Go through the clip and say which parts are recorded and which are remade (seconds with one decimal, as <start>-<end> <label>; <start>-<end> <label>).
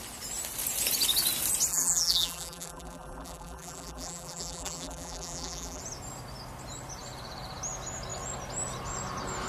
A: 0.0-1.7 recorded; 1.7-5.8 remade; 5.8-9.5 recorded